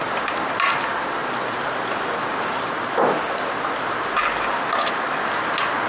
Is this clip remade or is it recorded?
recorded